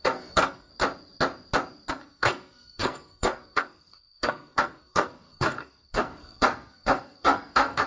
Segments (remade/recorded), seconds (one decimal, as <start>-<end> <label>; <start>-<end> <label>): 0.0-0.7 remade; 0.7-1.9 recorded; 1.9-7.9 remade